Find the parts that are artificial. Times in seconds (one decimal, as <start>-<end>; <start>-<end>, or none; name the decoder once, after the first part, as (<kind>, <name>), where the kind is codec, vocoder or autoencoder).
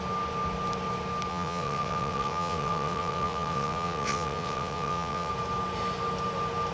1.3-5.3 (vocoder, WaveNeXt)